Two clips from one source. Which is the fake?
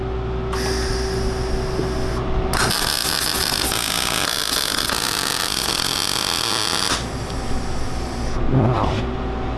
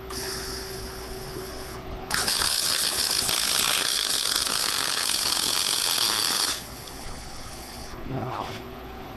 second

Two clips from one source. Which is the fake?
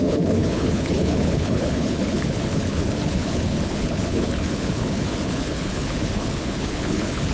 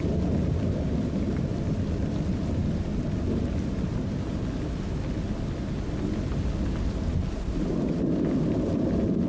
first